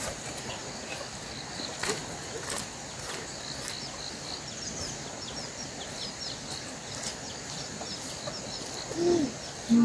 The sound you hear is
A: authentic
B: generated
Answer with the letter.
A